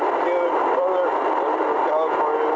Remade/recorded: recorded